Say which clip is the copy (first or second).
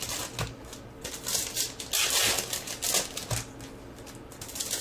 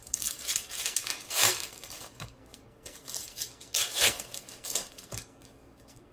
second